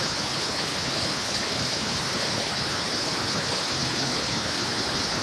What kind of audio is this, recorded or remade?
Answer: remade